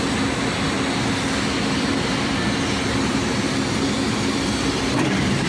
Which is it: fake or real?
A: real